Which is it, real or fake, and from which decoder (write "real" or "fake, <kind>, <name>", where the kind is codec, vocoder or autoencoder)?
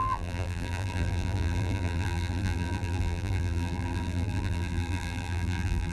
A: fake, vocoder, BigVGAN v2